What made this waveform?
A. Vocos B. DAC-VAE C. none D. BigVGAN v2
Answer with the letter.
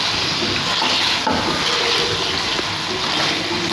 C